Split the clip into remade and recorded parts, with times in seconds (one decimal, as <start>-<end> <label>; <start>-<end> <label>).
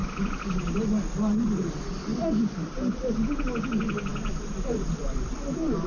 0.0-5.9 recorded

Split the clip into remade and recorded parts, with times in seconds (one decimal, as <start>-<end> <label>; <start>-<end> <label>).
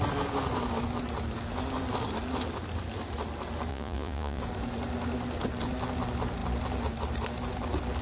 0.0-3.7 recorded; 3.7-4.4 remade; 4.4-8.0 recorded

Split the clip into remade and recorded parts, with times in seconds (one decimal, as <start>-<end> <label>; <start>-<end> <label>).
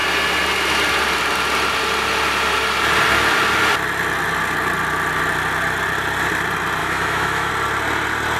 0.0-6.8 recorded; 6.8-7.5 remade; 7.5-8.4 recorded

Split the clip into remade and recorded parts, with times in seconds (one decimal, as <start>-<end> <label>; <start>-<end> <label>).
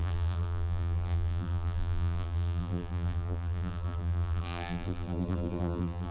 0.0-6.1 remade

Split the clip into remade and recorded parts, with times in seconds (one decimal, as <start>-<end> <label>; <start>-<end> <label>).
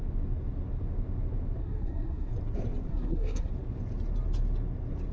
0.0-1.6 recorded; 1.6-2.3 remade; 2.3-2.9 recorded; 2.9-3.5 remade; 3.5-5.1 recorded